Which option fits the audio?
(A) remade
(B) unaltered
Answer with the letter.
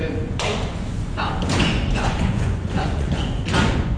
A